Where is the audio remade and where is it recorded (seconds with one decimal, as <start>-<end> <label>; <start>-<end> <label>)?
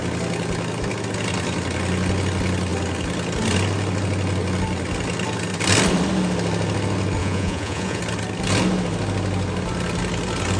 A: 0.0-7.2 recorded; 7.2-8.0 remade; 8.0-10.6 recorded